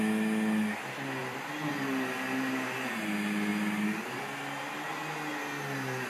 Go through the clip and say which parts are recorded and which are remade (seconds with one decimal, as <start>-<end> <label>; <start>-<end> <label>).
0.0-6.1 recorded